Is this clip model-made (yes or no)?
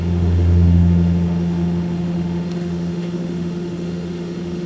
yes